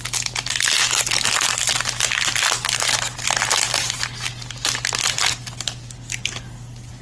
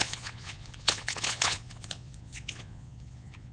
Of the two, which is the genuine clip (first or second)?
first